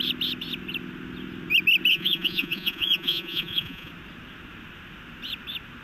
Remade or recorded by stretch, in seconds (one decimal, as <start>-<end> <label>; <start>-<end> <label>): 0.0-1.9 recorded; 1.9-3.9 remade; 3.9-5.8 recorded